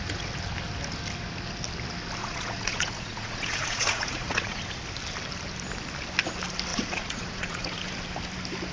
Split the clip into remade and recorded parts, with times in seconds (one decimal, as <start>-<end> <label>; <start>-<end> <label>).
0.0-2.2 recorded; 2.2-4.6 remade; 4.6-6.7 recorded; 6.7-7.9 remade; 7.9-8.7 recorded